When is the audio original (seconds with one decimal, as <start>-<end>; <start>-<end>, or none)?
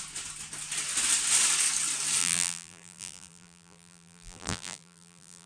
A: 0.0-2.2